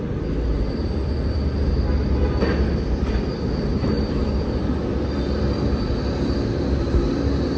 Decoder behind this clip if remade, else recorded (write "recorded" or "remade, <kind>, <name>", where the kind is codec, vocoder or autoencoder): recorded